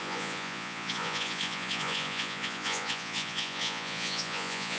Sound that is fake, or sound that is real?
fake